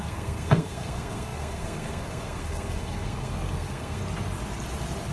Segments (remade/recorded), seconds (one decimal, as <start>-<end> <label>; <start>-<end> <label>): 0.0-4.0 remade; 4.0-5.1 recorded